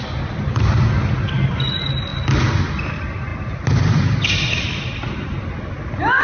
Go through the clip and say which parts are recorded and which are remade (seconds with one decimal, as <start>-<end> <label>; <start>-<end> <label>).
0.0-6.2 recorded

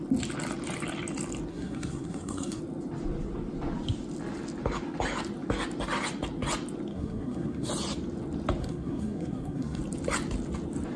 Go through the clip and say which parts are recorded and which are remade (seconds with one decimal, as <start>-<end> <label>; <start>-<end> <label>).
0.0-1.5 recorded; 1.5-2.6 remade; 2.6-6.9 recorded; 6.9-7.7 remade; 7.7-8.6 recorded; 8.6-9.8 remade; 9.8-11.0 recorded

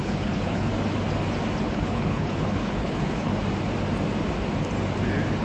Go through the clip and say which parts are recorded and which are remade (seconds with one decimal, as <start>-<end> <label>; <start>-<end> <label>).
0.0-0.7 remade; 0.7-1.6 recorded; 1.6-3.3 remade; 3.3-5.4 recorded

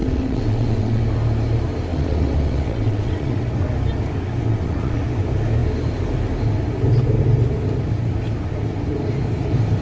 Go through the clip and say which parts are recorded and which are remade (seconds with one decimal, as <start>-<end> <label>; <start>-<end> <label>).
0.0-1.0 remade; 1.0-1.9 recorded; 1.9-3.4 remade; 3.4-4.4 recorded; 4.4-5.0 remade; 5.0-9.8 recorded

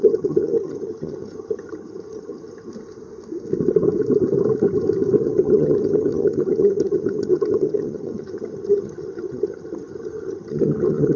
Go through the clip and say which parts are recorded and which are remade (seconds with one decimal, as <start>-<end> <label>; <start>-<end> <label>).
0.0-2.7 remade; 2.7-5.2 recorded; 5.2-11.2 remade